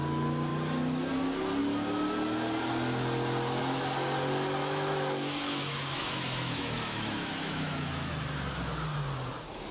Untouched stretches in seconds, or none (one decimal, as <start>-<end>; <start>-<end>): 0.0-4.6; 8.1-9.7